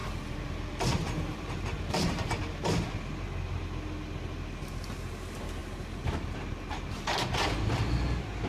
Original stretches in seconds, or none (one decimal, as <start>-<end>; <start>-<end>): 2.4-8.5